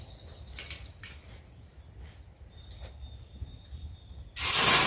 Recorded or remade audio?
recorded